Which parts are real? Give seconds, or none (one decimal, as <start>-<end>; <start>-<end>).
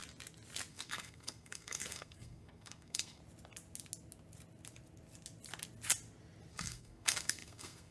0.0-0.7; 3.2-6.5